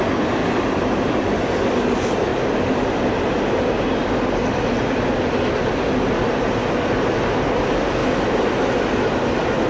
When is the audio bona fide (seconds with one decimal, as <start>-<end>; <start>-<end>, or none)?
0.0-2.3; 3.0-9.7